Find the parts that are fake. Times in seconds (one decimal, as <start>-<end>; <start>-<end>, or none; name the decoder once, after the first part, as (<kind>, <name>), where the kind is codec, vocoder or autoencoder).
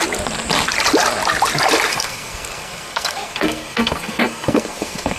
1.9-5.2 (codec, SNAC)